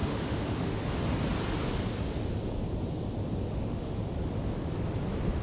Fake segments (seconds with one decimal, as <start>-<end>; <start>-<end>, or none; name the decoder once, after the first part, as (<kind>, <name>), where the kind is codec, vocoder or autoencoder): 0.0-0.9 (autoencoder, DAC-VAE); 3.5-4.0